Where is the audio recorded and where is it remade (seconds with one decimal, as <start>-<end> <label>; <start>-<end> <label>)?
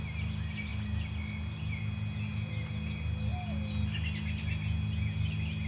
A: 0.0-5.7 recorded